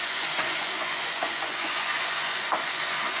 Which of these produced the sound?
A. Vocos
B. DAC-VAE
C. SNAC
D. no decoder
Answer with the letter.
A